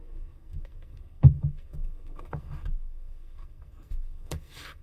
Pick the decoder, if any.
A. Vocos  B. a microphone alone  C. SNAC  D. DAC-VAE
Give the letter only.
C